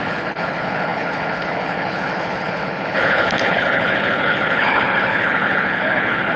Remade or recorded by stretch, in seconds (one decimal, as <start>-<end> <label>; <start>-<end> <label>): 0.0-6.4 remade

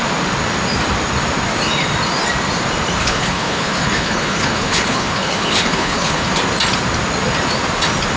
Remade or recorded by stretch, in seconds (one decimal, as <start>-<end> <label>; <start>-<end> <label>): 0.0-3.0 recorded; 3.0-6.3 remade; 6.3-8.2 recorded

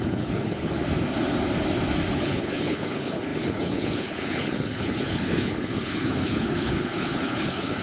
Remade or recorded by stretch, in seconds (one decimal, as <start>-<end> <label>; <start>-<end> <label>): 0.0-0.8 remade; 0.8-2.1 recorded; 2.1-7.8 remade